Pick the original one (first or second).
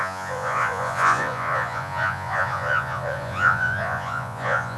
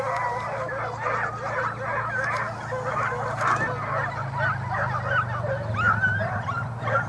second